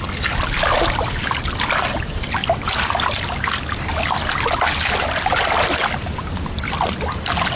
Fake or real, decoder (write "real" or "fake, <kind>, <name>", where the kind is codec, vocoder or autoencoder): real